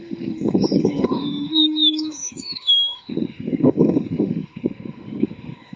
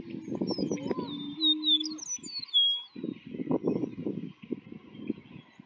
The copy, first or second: first